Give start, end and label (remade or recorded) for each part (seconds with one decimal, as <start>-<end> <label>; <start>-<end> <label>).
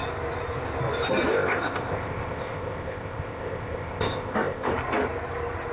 0.0-1.3 recorded; 1.3-4.7 remade; 4.7-5.7 recorded